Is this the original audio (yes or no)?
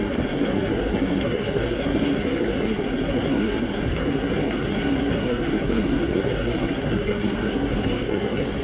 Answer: no